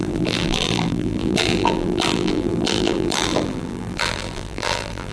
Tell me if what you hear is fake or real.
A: fake